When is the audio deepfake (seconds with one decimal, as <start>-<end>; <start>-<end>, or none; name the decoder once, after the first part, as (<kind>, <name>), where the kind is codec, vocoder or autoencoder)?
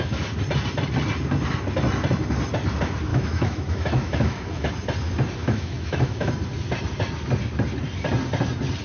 3.1-4.7 (autoencoder, DAC-VAE); 5.4-6.3